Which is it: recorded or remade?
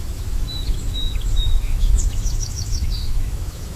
remade